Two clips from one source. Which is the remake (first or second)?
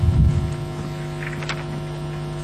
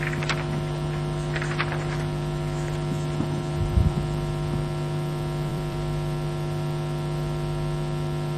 second